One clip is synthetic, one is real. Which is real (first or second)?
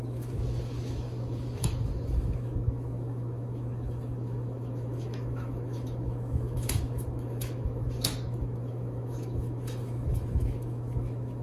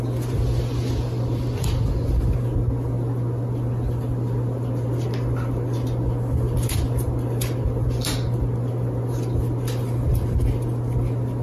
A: second